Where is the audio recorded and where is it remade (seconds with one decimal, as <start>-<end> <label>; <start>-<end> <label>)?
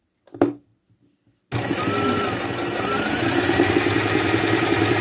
0.0-0.7 remade; 0.7-3.7 recorded; 3.7-5.0 remade